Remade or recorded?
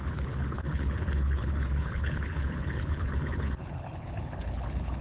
remade